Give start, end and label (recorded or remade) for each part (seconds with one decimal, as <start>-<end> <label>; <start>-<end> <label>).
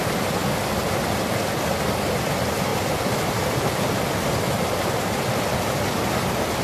0.0-6.6 recorded